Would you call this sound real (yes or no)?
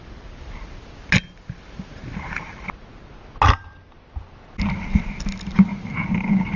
yes